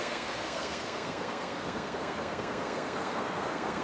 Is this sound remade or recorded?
remade